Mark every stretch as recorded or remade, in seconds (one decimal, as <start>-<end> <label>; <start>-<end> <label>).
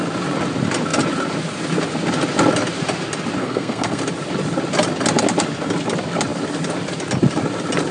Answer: 0.0-3.4 recorded; 3.4-4.0 remade; 4.0-7.9 recorded